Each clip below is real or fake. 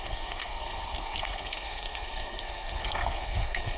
fake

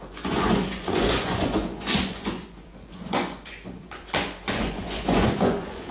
fake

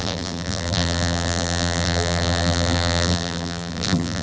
fake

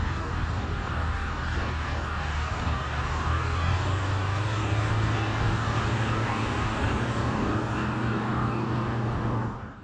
fake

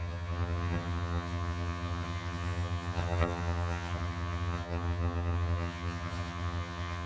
fake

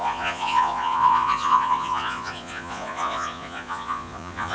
fake